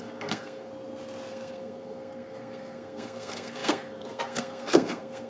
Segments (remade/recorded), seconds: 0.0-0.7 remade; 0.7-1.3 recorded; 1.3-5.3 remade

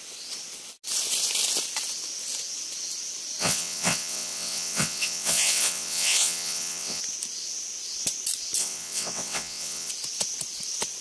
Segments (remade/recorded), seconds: 0.0-3.4 recorded; 3.4-7.0 remade; 7.0-8.6 recorded; 8.6-9.9 remade; 9.9-11.0 recorded

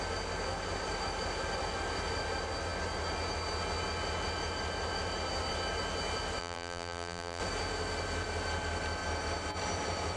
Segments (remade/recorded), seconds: 0.0-6.4 recorded; 6.4-7.4 remade; 7.4-10.2 recorded

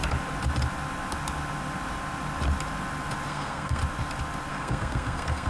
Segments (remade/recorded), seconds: 0.0-3.3 recorded; 3.3-3.8 remade; 3.8-4.5 recorded; 4.5-5.5 remade

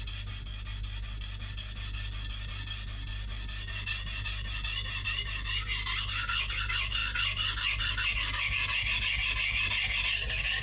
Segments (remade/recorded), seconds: 0.0-10.6 recorded

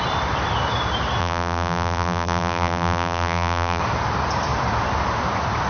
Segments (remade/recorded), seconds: 0.0-1.2 recorded; 1.2-3.8 remade; 3.8-5.7 recorded

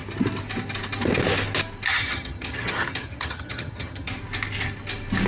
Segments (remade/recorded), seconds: 0.0-1.9 recorded; 1.9-4.1 remade; 4.1-5.3 recorded

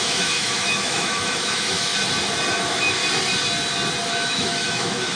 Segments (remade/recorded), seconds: 0.0-1.9 remade; 1.9-2.5 recorded; 2.5-3.0 remade; 3.0-4.1 recorded; 4.1-5.2 remade